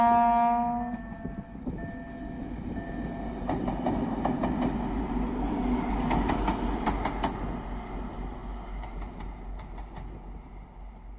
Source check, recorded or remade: recorded